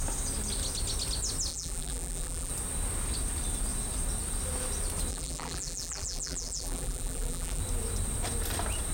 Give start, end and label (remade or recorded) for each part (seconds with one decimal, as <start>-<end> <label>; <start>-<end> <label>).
0.0-1.5 recorded; 1.5-2.5 remade; 2.5-5.1 recorded; 5.1-7.6 remade; 7.6-8.9 recorded